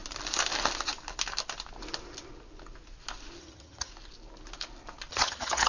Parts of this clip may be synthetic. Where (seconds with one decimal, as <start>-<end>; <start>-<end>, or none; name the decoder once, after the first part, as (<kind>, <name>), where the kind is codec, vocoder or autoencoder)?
3.4-3.9 (vocoder, HiFi-GAN); 5.1-5.7